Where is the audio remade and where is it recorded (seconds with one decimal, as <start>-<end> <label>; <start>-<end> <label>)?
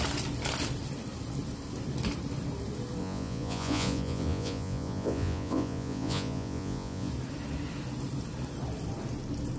0.0-3.0 recorded; 3.0-7.1 remade; 7.1-9.6 recorded